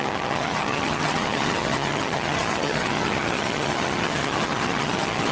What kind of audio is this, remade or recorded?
remade